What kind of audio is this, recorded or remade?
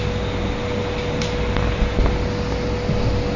recorded